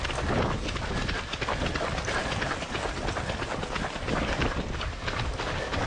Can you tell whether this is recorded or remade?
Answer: recorded